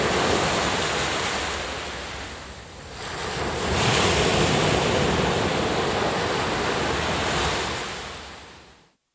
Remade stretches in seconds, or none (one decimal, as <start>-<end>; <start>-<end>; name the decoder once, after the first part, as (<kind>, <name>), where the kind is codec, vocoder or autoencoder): none